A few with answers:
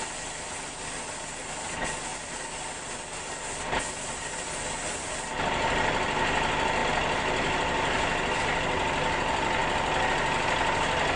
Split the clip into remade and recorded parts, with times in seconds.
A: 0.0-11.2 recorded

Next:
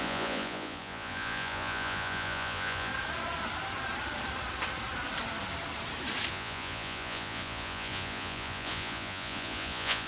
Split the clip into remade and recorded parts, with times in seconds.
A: 0.0-2.9 remade; 2.9-6.3 recorded; 6.3-10.1 remade

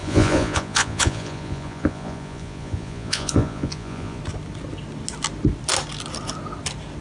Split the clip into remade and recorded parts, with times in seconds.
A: 0.0-4.2 remade; 4.2-7.0 recorded

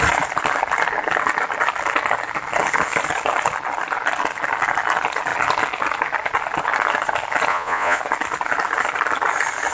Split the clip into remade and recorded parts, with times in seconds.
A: 0.0-7.5 recorded; 7.5-8.0 remade; 8.0-9.7 recorded

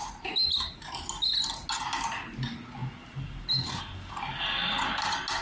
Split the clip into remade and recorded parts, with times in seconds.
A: 0.0-5.4 recorded

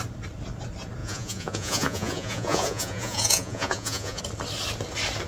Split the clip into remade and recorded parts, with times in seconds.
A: 0.0-1.0 recorded; 1.0-4.2 remade; 4.2-5.3 recorded